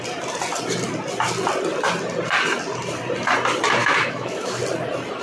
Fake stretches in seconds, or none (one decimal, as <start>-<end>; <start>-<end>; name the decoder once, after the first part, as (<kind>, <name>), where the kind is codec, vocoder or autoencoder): 3.8-4.6 (autoencoder, DAC-VAE)